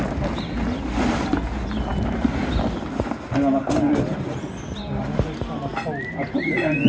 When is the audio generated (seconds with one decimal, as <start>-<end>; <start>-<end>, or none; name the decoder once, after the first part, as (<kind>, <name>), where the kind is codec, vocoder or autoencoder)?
none